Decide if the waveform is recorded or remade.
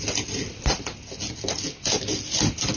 recorded